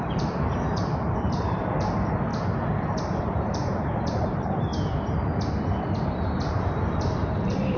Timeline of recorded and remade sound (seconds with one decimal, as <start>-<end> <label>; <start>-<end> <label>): 0.0-2.3 remade; 2.3-3.0 recorded; 3.0-4.7 remade; 4.7-6.1 recorded; 6.1-7.8 remade